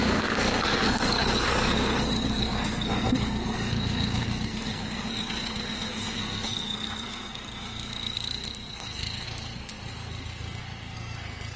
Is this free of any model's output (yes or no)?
no